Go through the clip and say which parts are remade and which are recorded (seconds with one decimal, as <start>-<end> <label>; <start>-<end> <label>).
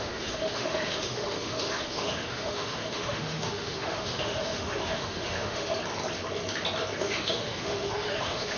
0.0-5.7 remade; 5.7-7.0 recorded; 7.0-8.6 remade